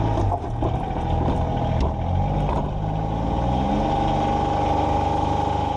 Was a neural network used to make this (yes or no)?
no